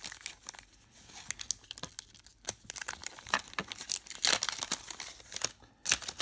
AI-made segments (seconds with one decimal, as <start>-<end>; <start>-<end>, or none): none